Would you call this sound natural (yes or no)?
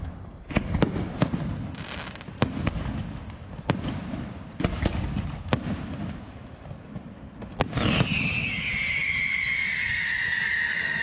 yes